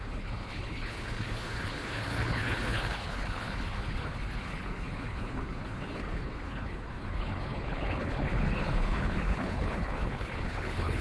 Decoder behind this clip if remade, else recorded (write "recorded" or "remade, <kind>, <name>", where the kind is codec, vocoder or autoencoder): remade, codec, HILCodec